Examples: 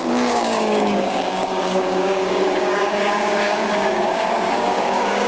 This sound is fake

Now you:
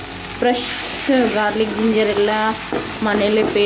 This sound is real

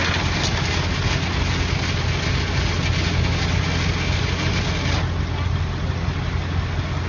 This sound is real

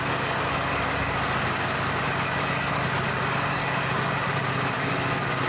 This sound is fake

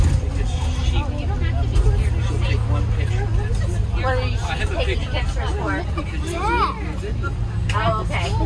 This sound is real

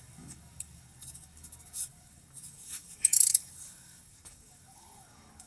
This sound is fake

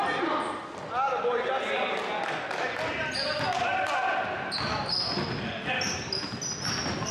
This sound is real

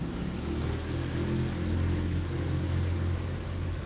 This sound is fake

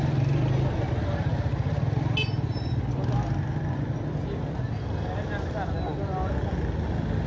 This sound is real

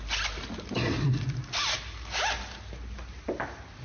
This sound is real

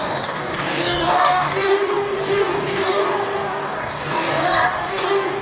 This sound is fake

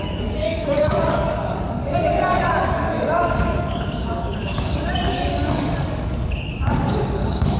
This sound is fake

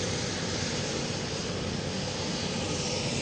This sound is real